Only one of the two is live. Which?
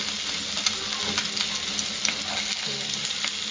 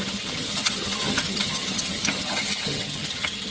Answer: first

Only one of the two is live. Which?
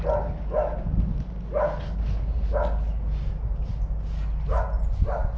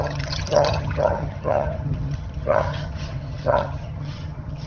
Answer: first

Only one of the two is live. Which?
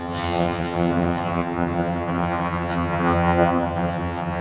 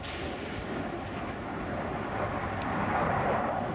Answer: second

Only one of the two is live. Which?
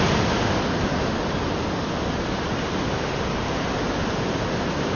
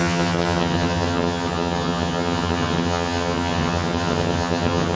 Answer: first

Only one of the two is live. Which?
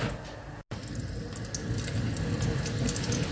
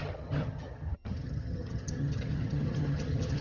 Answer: first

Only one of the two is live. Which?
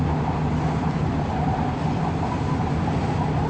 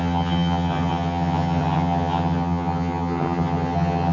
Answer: first